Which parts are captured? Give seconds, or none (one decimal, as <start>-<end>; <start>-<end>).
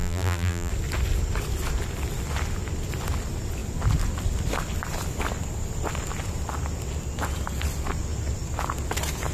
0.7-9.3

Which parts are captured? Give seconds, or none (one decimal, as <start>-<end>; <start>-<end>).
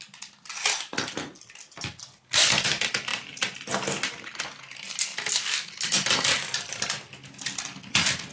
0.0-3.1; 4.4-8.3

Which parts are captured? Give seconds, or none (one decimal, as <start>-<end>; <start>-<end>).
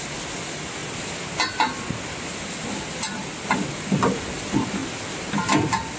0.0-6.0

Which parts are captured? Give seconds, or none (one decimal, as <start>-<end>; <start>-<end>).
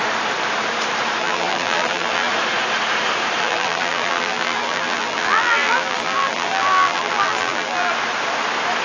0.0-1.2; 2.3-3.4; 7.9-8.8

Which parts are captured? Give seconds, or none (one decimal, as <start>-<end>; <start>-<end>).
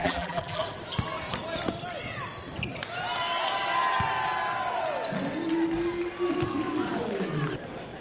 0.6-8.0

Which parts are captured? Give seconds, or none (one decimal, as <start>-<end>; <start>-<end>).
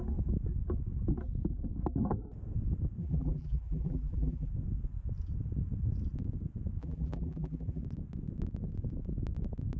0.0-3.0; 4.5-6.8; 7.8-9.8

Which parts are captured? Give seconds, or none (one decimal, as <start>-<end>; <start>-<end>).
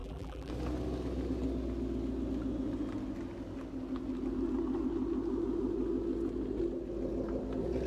0.5-7.9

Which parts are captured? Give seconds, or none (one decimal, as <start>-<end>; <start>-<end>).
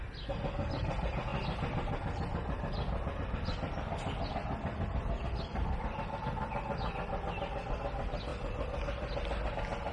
0.0-5.5; 6.2-8.3; 9.5-9.9